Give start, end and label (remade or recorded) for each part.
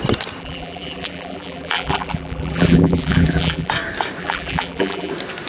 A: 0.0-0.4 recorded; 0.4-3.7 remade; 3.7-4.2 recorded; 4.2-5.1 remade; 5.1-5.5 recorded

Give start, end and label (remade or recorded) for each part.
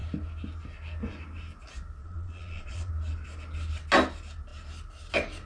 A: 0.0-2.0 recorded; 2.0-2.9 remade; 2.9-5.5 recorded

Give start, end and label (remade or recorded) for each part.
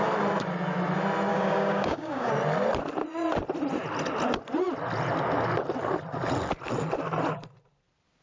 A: 0.0-1.3 recorded; 1.3-2.3 remade; 2.3-8.2 recorded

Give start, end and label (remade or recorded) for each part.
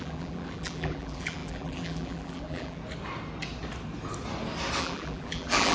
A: 0.0-2.8 remade; 2.8-4.8 recorded; 4.8-5.7 remade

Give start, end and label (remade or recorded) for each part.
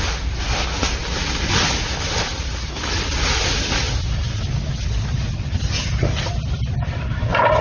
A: 0.0-7.6 recorded